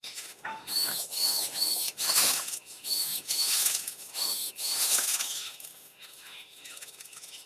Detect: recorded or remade remade